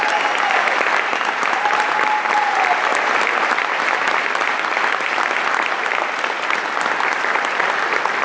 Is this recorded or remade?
recorded